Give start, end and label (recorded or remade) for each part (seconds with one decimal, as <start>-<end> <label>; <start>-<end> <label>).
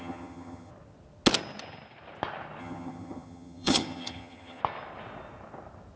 0.0-0.7 remade; 0.7-2.6 recorded; 2.6-4.6 remade; 4.6-6.0 recorded